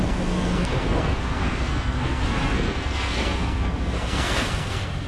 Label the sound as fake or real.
fake